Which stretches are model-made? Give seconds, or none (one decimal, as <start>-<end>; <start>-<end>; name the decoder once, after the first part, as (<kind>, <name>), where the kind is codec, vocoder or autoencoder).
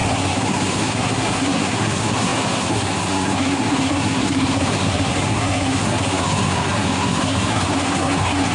0.0-8.5 (codec, SNAC)